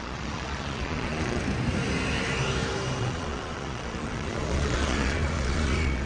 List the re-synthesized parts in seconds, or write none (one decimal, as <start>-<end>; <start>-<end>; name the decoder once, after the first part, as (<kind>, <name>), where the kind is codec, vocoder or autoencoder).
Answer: 0.0-1.4 (vocoder, Vocos); 3.0-6.1